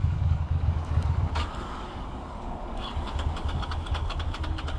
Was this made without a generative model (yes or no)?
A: no